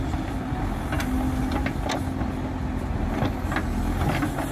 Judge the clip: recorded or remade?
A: recorded